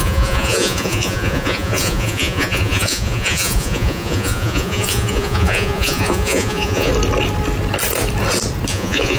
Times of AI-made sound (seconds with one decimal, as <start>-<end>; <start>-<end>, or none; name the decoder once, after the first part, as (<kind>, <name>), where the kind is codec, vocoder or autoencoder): 0.0-6.9 (vocoder, Vocos); 8.7-9.2